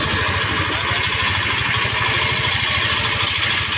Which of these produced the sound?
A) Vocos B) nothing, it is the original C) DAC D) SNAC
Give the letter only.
B